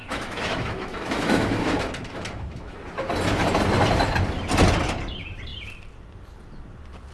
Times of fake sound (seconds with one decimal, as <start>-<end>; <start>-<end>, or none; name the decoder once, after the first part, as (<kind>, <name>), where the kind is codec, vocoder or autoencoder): 0.0-2.8 (autoencoder, DAC-VAE)